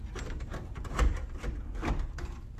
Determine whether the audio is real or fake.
fake